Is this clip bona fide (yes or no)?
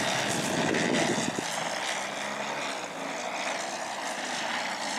yes